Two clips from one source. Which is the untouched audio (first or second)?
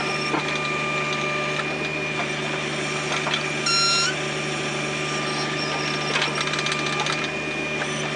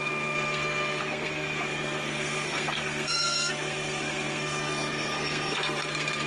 first